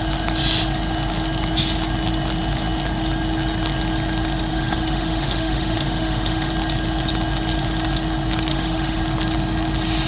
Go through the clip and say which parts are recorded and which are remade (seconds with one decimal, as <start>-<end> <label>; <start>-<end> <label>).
0.0-4.5 recorded; 4.5-6.5 remade; 6.5-8.5 recorded; 8.5-9.0 remade; 9.0-10.1 recorded